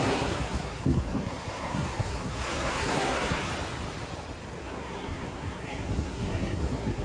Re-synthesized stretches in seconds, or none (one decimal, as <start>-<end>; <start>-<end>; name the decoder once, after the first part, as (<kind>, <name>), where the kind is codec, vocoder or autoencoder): 0.0-3.5 (codec, SNAC); 4.6-7.0